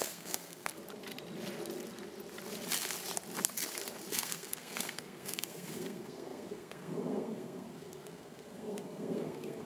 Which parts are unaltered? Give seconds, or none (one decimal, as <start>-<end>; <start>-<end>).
0.8-4.1